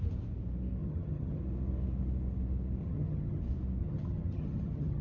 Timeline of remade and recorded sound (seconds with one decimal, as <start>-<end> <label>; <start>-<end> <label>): 0.0-0.8 recorded; 0.8-1.4 remade; 1.4-2.8 recorded; 2.8-3.4 remade; 3.4-3.8 recorded; 3.8-5.0 remade